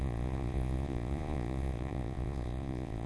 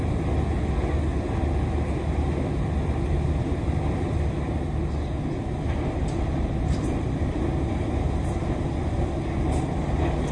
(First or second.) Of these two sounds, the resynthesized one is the first